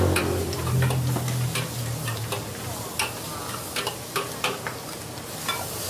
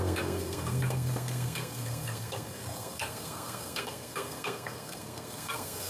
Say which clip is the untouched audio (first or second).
first